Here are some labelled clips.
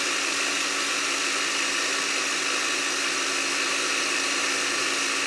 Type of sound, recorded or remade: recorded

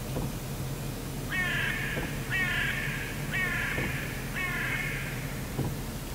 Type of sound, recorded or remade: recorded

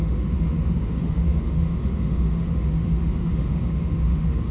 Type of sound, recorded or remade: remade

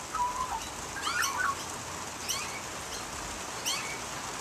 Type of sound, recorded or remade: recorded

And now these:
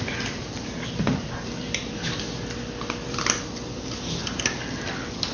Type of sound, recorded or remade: recorded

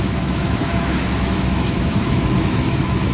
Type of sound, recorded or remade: remade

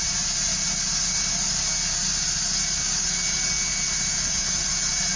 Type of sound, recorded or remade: recorded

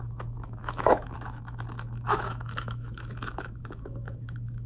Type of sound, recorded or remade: remade